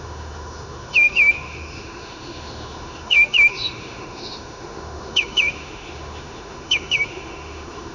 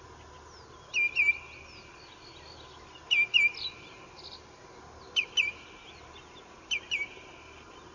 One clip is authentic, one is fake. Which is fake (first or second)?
first